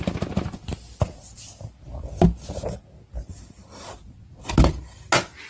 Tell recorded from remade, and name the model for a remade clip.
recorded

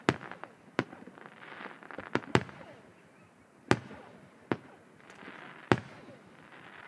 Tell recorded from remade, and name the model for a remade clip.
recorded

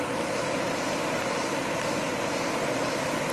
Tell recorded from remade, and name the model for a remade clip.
recorded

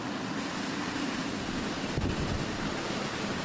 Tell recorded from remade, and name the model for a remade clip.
recorded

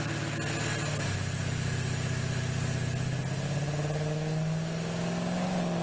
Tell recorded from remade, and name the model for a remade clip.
recorded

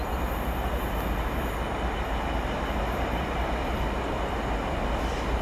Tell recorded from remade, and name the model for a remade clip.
recorded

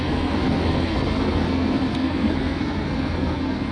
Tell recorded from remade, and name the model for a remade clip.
remade, codec, SNAC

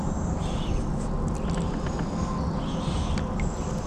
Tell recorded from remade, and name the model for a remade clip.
recorded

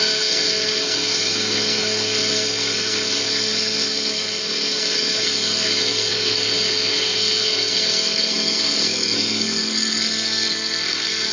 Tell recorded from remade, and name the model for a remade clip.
remade, codec, SNAC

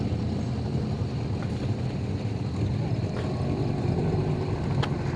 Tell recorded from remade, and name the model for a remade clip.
recorded